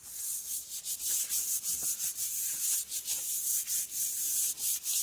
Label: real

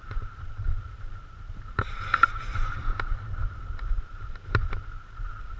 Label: fake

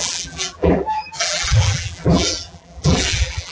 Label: fake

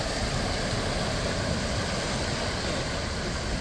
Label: real